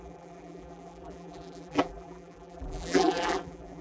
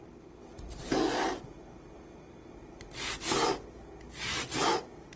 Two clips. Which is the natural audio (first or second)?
second